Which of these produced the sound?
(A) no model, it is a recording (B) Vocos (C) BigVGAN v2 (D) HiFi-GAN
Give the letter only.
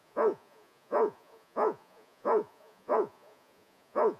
B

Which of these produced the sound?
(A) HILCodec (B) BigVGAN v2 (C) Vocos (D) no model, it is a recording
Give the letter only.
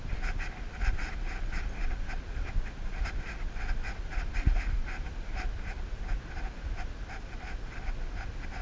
D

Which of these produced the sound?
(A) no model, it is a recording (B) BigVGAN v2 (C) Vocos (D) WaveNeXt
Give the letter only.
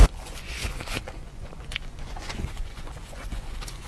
C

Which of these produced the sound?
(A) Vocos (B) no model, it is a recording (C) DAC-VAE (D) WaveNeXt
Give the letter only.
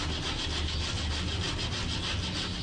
B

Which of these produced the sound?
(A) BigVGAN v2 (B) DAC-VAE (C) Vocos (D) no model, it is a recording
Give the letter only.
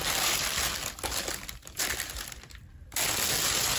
D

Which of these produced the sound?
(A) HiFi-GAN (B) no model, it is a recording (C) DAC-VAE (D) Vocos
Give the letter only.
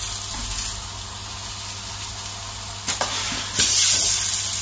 B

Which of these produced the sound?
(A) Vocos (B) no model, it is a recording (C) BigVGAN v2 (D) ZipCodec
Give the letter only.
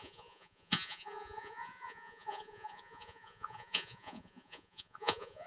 A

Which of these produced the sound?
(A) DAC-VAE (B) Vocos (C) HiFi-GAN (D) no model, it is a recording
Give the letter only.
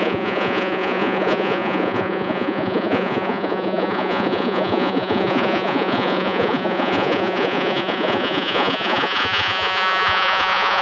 B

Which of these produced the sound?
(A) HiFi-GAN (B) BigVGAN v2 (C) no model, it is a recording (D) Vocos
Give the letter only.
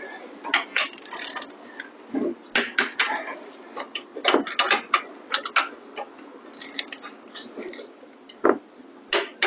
C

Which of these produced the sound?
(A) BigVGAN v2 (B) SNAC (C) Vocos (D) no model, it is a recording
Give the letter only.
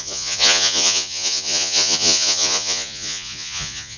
C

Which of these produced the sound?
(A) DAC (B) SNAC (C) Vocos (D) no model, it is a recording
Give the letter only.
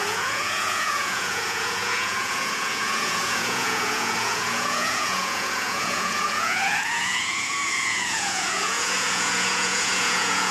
C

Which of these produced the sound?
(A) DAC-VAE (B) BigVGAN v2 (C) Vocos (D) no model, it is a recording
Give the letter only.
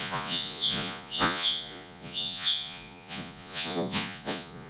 C